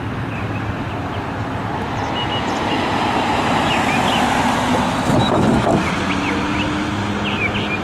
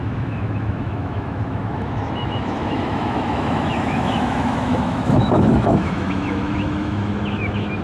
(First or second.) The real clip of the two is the first